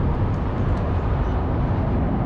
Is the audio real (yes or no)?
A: no